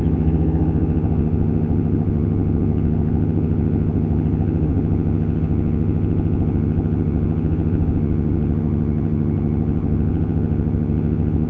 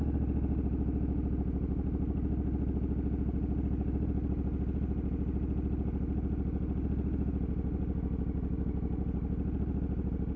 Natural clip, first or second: second